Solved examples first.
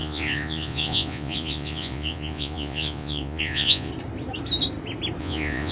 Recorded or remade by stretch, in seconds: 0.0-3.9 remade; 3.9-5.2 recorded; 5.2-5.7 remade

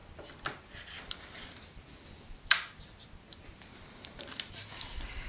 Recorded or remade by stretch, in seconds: 0.0-5.3 recorded

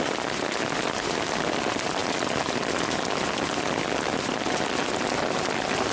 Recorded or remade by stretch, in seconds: 0.0-5.9 recorded

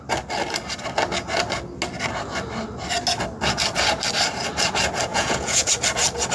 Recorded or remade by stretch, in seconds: 0.0-5.1 recorded; 5.1-5.7 remade; 5.7-6.3 recorded

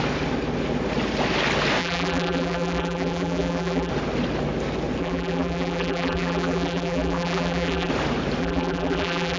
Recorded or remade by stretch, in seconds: 0.0-1.8 recorded; 1.8-3.9 remade; 3.9-5.0 recorded; 5.0-7.9 remade; 7.9-8.4 recorded; 8.4-9.4 remade